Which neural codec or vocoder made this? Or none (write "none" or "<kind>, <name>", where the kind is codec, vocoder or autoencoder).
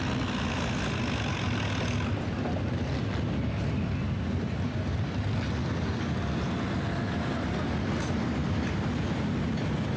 none